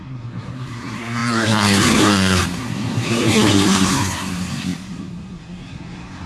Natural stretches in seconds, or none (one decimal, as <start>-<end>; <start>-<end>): none